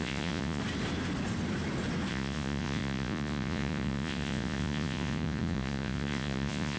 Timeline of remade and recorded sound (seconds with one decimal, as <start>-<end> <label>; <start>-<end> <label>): 0.0-0.6 remade; 0.6-2.1 recorded; 2.1-6.8 remade